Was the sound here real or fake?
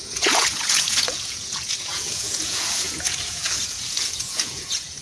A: fake